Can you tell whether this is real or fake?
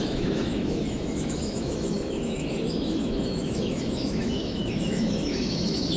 fake